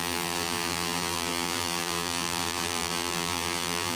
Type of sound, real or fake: fake